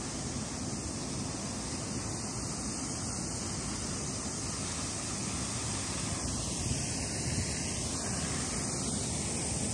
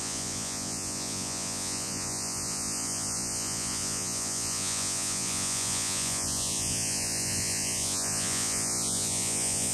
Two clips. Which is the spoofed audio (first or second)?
second